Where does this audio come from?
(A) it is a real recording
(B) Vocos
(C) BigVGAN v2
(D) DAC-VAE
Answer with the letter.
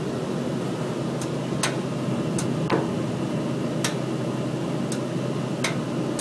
A